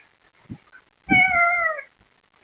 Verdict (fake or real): real